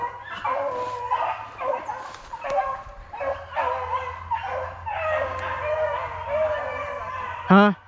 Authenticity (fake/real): real